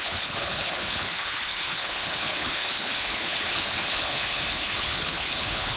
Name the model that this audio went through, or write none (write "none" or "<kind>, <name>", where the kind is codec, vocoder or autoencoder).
codec, HILCodec